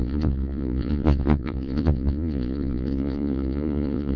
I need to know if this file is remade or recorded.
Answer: remade